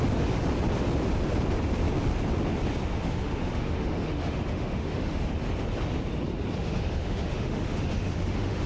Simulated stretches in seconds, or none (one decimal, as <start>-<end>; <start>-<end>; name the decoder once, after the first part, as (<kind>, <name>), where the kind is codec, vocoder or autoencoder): 2.9-5.2 (autoencoder, DAC-VAE); 6.6-8.7